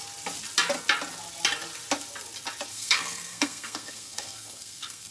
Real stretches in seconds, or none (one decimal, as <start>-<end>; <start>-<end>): 0.0-2.7

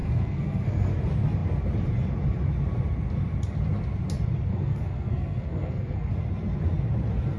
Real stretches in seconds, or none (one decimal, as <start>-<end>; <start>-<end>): 0.9-4.5; 6.1-7.4

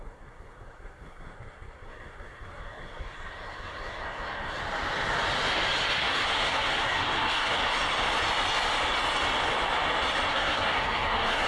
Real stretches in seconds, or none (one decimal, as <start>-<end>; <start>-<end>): 4.6-6.0; 7.6-10.3

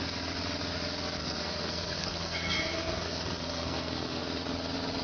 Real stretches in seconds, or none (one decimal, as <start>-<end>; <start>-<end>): 0.0-1.2; 4.2-5.0

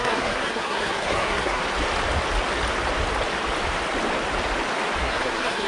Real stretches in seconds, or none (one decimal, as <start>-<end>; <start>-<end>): 1.6-5.0

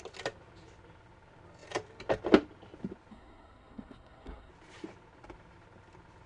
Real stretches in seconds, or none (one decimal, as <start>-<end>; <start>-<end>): 0.0-3.1; 4.5-6.3

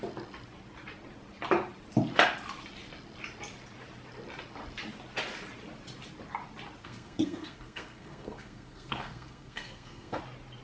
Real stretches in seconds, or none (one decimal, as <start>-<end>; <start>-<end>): 0.0-6.8; 10.2-10.6